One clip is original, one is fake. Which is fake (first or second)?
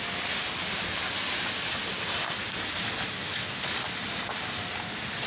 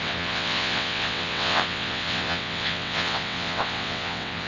second